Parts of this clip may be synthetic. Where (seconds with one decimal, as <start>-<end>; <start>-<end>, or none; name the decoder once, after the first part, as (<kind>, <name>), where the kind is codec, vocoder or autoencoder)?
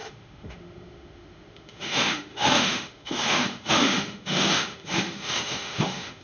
0.0-6.2 (autoencoder, DAC-VAE)